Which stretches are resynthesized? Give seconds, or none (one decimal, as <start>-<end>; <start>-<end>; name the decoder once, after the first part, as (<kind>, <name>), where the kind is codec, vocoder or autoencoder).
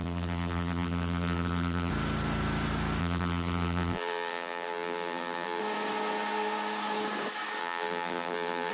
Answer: 0.0-1.9 (vocoder, BigVGAN v2); 3.0-5.6; 7.6-8.7